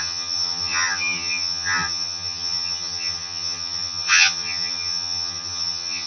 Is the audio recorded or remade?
remade